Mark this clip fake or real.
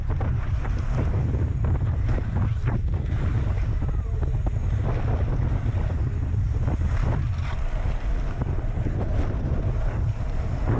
real